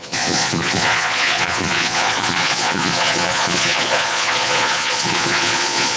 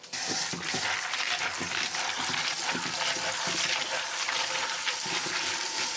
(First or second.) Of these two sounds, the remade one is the first